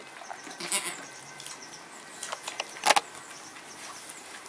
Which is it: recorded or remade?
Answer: recorded